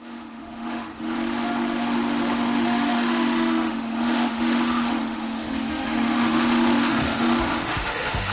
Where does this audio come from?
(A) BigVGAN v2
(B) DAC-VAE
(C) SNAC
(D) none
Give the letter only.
B